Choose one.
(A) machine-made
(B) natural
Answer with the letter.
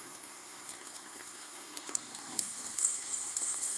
A